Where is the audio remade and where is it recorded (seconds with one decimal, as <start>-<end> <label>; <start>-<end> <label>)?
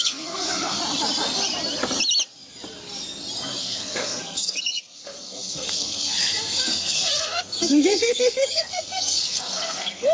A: 0.0-0.8 remade; 0.8-3.6 recorded; 3.6-10.1 remade